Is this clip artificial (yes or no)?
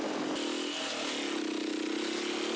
no